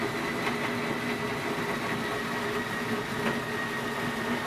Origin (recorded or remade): recorded